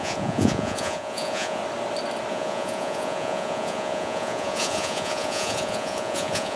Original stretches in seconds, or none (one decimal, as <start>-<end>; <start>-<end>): 1.6-2.3